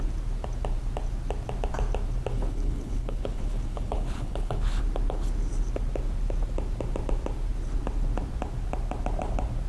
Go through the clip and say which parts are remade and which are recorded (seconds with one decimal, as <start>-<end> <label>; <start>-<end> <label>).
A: 0.0-2.3 recorded; 2.3-4.8 remade; 4.8-9.7 recorded